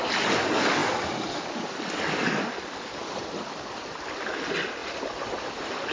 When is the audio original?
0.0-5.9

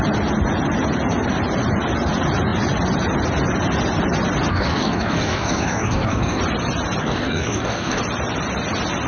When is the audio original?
0.0-4.5; 6.4-7.0; 8.0-9.1

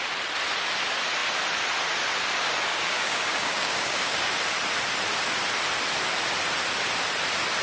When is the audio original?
0.0-2.7; 4.3-7.6